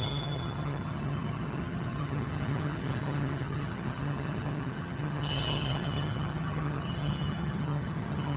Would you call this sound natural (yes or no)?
no